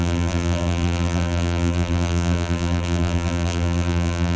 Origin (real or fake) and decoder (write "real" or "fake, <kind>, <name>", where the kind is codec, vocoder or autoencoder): fake, vocoder, BigVGAN v2